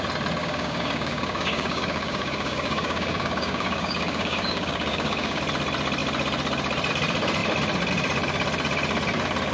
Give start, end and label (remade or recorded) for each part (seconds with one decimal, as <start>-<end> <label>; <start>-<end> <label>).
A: 0.0-0.4 recorded; 0.4-5.4 remade; 5.4-9.5 recorded